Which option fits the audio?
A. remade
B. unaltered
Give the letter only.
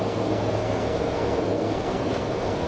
A